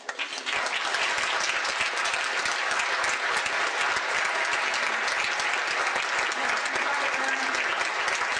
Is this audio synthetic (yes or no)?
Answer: no